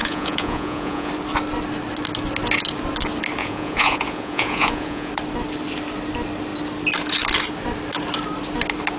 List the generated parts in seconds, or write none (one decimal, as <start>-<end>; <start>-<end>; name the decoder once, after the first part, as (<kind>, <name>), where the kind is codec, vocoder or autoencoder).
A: 0.0-1.1 (vocoder, Vocos); 3.4-5.1